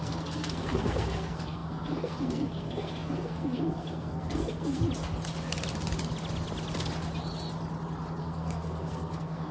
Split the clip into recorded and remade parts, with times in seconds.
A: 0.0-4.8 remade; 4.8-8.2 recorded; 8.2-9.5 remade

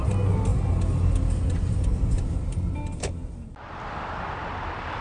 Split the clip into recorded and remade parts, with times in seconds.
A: 0.0-5.0 recorded

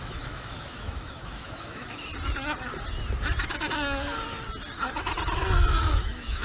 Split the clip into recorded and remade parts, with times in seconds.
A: 0.0-2.1 remade; 2.1-5.9 recorded; 5.9-6.4 remade

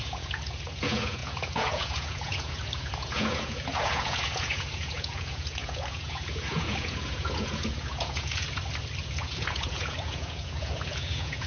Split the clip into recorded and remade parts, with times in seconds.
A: 0.0-8.6 remade; 8.6-9.1 recorded; 9.1-11.5 remade

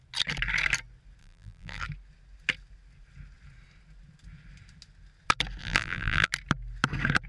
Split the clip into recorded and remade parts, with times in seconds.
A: 0.0-1.2 recorded; 1.2-1.8 remade; 1.8-5.6 recorded; 5.6-6.3 remade; 6.3-7.3 recorded